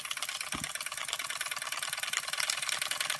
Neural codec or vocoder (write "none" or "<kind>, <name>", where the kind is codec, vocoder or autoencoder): none